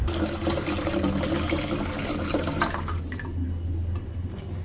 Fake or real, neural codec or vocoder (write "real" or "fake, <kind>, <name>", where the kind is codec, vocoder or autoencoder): real